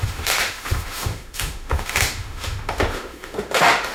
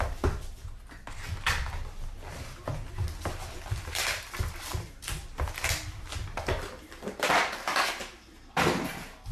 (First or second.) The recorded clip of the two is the second